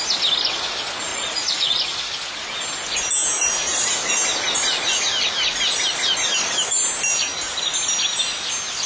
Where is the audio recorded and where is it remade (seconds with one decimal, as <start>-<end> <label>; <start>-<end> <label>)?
0.0-1.1 recorded; 1.1-1.8 remade; 1.8-8.9 recorded